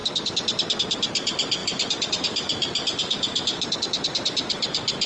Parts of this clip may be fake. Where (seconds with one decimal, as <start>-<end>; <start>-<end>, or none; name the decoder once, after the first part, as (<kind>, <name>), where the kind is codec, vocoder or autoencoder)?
1.6-5.1 (vocoder, BigVGAN v2)